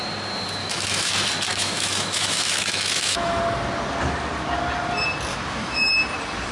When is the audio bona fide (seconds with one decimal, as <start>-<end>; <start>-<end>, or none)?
0.0-0.6; 1.1-1.5; 3.4-5.3; 5.9-6.5

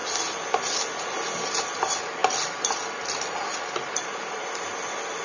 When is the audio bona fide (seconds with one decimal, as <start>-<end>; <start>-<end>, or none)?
0.0-1.7